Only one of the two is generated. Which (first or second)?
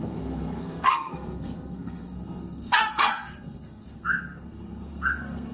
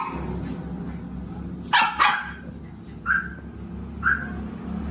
first